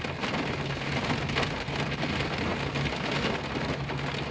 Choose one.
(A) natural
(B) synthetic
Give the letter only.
A